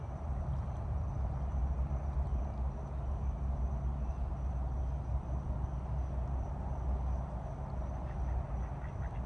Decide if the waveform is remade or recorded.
recorded